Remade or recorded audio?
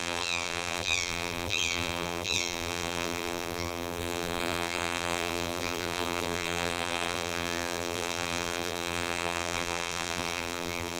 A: remade